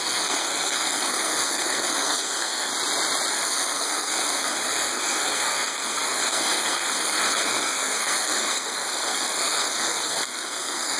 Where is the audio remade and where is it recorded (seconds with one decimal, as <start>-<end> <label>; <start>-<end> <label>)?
0.0-2.7 remade; 2.7-3.3 recorded; 3.3-11.0 remade